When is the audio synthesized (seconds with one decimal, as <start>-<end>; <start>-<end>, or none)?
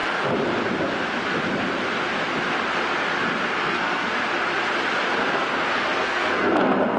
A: 3.6-4.2; 5.2-7.0